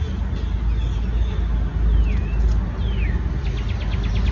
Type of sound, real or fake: real